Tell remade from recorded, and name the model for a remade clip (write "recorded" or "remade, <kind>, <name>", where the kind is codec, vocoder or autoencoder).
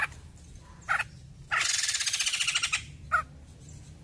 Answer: recorded